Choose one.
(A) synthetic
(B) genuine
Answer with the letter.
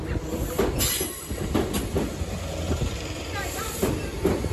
B